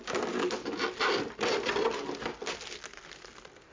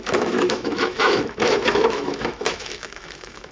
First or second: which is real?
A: first